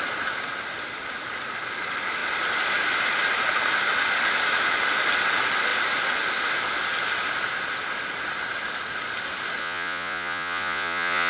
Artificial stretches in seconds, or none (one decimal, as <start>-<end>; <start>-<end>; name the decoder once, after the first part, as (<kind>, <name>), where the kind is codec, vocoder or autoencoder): 9.6-11.3 (vocoder, Vocos)